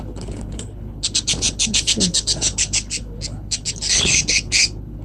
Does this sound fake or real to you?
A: fake